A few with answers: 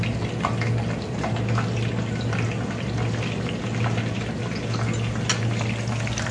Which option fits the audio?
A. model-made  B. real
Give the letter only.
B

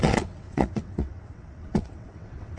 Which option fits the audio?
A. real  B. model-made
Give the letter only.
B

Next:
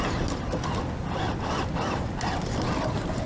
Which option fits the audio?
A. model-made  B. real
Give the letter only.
B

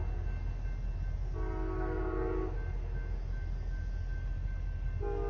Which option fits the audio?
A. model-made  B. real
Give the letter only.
B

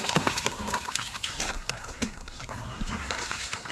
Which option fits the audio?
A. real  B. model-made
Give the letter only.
B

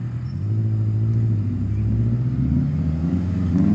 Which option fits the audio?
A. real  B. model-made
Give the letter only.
A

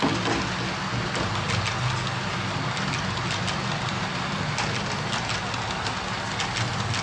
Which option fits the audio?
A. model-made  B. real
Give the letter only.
B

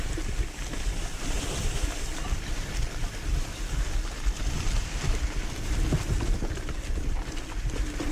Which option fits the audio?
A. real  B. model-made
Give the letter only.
B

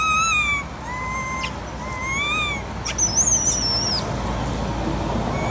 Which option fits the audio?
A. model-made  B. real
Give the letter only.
B